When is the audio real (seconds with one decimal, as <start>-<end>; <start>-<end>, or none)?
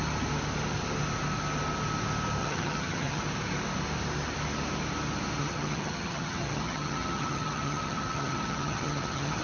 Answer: 0.0-2.4; 3.2-5.4